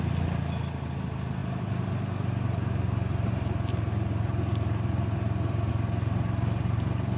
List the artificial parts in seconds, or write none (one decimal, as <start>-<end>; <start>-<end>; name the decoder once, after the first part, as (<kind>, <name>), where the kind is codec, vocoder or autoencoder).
none